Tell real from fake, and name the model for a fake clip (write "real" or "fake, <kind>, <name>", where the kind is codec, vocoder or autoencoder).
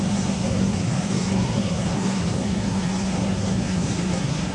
fake, codec, SNAC